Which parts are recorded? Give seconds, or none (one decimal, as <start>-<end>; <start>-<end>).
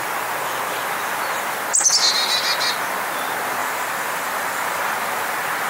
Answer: 0.0-3.6; 4.8-5.7